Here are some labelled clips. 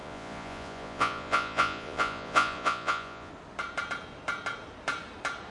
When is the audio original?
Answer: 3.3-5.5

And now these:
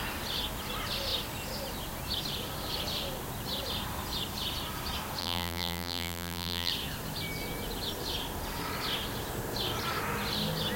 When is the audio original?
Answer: 0.0-5.2; 6.7-10.8

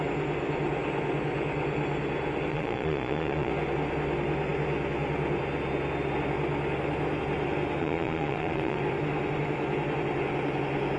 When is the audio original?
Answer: 0.0-2.5; 3.5-7.8; 8.8-11.0

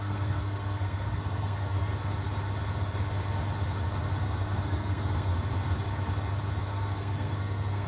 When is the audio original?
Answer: 1.9-4.2; 5.3-6.6

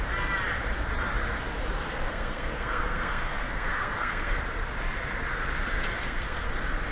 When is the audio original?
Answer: 0.0-2.1; 4.4-5.9; 6.5-6.9

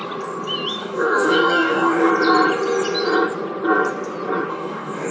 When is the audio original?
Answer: 0.0-0.8; 2.1-4.5